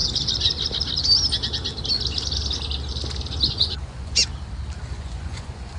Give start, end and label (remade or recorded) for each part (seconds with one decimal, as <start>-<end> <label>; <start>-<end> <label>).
0.0-3.5 recorded; 3.5-4.2 remade; 4.2-4.9 recorded; 4.9-5.8 remade